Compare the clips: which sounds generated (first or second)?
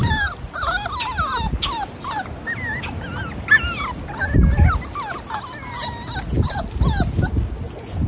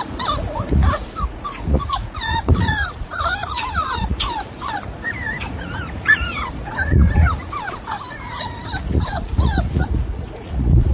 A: second